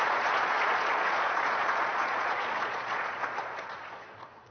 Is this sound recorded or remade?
remade